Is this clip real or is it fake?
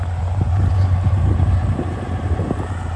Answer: fake